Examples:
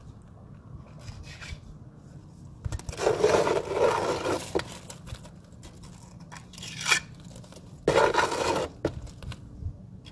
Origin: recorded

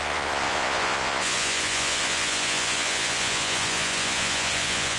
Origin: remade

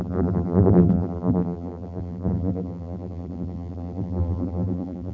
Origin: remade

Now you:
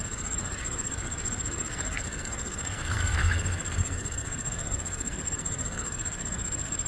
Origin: remade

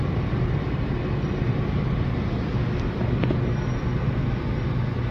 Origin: recorded